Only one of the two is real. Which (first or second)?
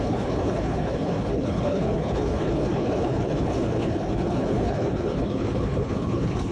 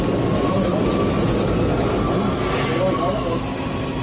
second